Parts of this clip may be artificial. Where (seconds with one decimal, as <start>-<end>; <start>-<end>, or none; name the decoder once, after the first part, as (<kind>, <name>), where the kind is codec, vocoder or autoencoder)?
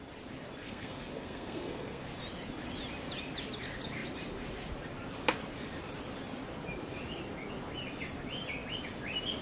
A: 0.6-2.0 (codec, SNAC)